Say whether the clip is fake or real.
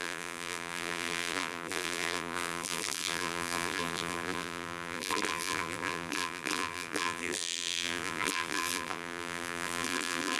fake